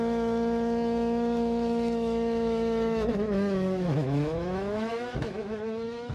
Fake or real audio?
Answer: fake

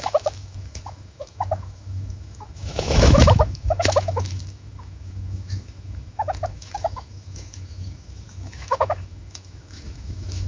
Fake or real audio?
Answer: fake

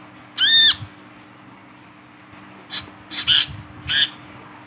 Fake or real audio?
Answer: real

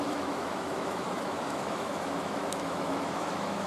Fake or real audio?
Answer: fake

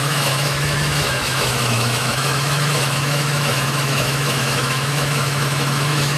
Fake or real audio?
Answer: fake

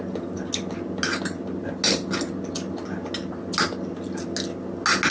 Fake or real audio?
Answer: real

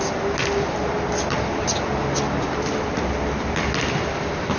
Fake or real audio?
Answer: real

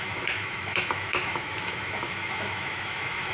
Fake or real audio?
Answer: fake